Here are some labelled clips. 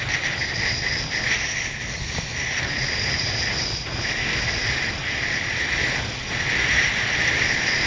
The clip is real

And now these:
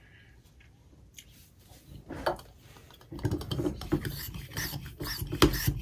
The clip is real